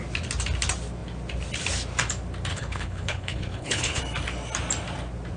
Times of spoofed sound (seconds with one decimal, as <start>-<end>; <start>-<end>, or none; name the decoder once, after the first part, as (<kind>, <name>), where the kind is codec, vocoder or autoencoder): 2.5-4.0 (codec, HILCodec)